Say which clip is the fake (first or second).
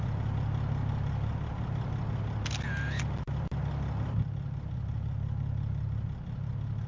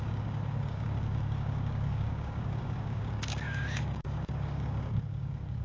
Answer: second